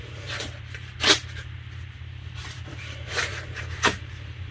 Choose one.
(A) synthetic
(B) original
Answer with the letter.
A